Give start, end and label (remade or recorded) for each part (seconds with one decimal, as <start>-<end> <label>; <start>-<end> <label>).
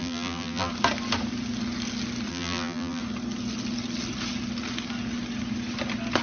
0.0-0.7 remade; 0.7-2.3 recorded; 2.3-3.0 remade; 3.0-6.2 recorded